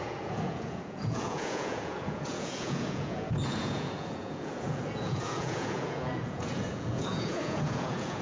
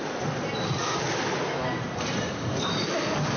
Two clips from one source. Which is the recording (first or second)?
second